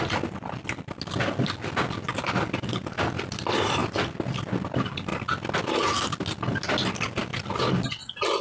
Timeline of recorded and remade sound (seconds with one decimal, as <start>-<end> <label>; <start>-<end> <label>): 0.0-8.4 recorded